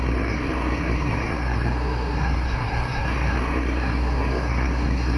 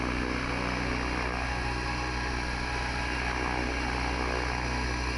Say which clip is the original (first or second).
second